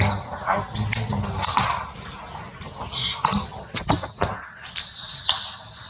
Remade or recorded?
recorded